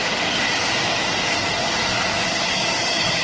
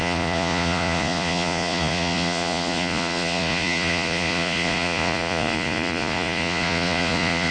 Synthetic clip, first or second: second